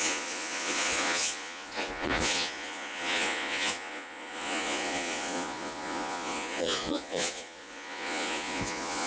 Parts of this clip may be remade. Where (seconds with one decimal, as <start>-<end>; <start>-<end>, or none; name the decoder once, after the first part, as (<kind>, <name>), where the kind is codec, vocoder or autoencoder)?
0.0-9.1 (vocoder, Vocos)